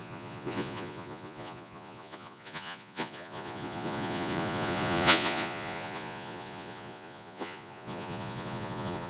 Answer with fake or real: fake